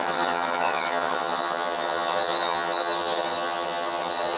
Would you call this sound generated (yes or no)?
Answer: yes